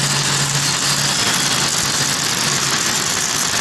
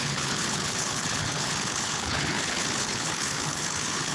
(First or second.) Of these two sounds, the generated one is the second